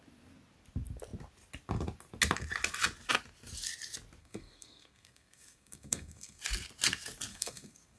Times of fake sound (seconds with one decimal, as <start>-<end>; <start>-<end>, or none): 4.2-6.4; 7.3-8.0